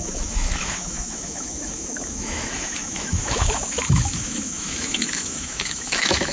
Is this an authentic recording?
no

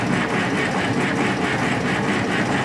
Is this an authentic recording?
yes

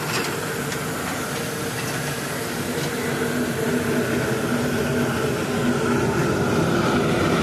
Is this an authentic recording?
yes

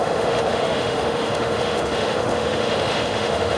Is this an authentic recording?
no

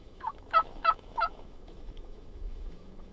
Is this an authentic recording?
no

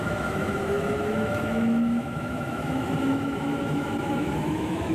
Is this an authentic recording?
no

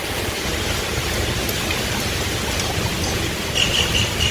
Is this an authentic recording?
yes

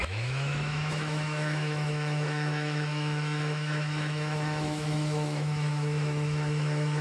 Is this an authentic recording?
no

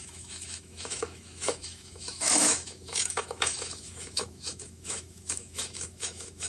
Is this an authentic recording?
no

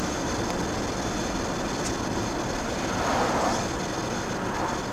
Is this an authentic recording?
yes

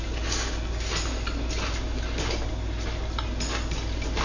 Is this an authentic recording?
yes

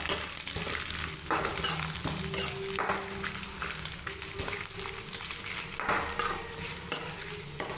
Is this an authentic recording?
yes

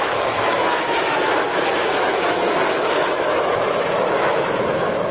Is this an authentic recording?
no